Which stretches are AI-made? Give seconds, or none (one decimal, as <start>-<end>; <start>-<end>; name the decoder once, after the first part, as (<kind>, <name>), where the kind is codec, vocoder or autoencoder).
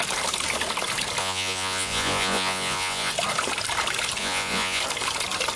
1.2-3.1 (vocoder, Vocos); 4.2-4.8